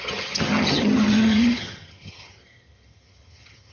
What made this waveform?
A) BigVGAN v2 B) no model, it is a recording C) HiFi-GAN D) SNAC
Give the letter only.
C